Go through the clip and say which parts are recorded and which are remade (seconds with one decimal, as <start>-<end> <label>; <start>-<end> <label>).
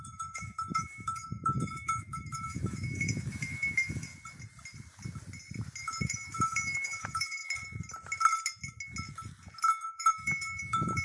0.0-4.1 remade; 4.1-6.0 recorded; 6.0-7.4 remade; 7.4-9.9 recorded; 9.9-11.0 remade